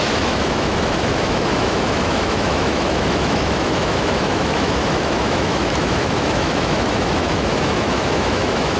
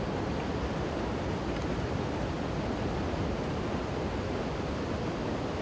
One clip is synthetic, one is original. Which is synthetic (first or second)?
first